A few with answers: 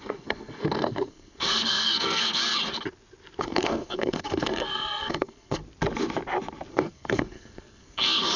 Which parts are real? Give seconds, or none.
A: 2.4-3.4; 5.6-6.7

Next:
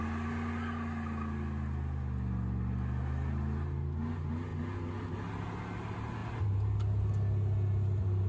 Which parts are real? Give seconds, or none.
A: 0.0-8.3

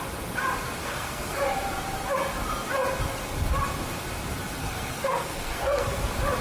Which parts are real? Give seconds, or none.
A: 0.0-0.8; 1.4-4.6; 6.0-6.4

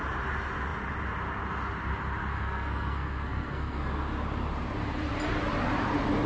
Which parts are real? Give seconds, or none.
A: 0.0-2.3; 3.9-6.3

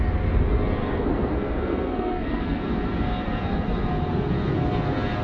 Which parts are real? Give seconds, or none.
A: 0.0-0.8; 2.6-5.2